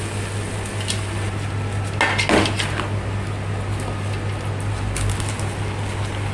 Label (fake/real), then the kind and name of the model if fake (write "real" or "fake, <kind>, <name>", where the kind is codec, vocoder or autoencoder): real